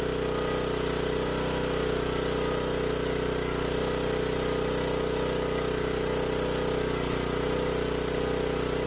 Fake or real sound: real